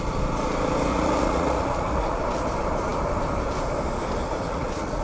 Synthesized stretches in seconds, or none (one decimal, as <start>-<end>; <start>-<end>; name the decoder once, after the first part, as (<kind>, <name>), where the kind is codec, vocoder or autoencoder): 0.9-2.2 (vocoder, Vocos); 4.2-5.0